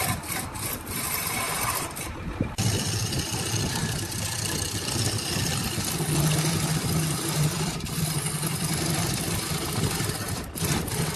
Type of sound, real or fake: fake